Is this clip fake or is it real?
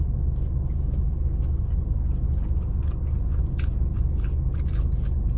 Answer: real